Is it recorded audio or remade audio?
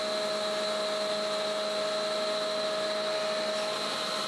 recorded